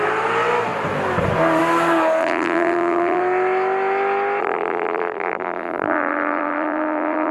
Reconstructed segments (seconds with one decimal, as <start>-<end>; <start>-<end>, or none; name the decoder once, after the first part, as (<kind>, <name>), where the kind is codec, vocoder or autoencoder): 2.2-3.2 (vocoder, BigVGAN v2); 4.4-7.3

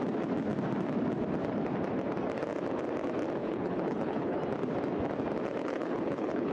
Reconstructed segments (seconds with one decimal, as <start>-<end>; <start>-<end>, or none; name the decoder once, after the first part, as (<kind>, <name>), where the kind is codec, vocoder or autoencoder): 3.4-4.4 (codec, HILCodec); 5.6-6.5

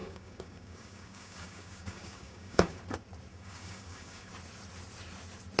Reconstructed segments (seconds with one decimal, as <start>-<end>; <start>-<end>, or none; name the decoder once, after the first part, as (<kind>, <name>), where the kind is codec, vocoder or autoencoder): 0.0-2.8 (codec, DAC); 3.3-4.3

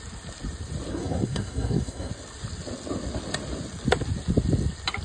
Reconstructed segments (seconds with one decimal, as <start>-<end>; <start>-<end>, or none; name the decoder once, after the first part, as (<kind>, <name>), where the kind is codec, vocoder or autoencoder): 0.9-2.1 (codec, SNAC)

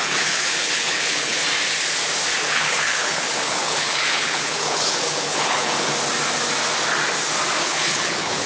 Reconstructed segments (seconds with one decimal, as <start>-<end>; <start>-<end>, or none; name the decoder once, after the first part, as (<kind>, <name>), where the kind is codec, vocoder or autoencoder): 0.0-1.4 (codec, HILCodec); 2.4-5.9; 7.6-8.5

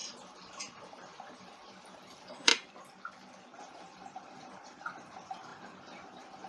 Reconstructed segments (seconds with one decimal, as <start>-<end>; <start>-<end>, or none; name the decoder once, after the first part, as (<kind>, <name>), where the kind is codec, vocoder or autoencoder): 0.0-2.5 (vocoder, BigVGAN v2); 3.6-6.5

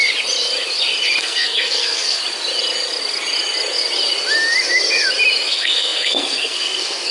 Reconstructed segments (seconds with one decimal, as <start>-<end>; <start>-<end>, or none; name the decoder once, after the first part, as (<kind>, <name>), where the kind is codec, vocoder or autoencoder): 1.2-2.2 (codec, SNAC); 5.5-7.1